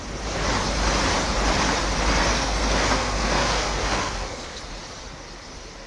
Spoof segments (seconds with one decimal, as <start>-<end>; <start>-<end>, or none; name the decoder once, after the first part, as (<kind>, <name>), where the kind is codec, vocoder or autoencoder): 2.2-4.6 (codec, SNAC)